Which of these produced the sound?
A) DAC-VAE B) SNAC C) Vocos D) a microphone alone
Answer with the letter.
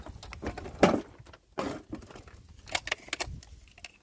D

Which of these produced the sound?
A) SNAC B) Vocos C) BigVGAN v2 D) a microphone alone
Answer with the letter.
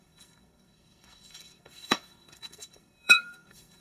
A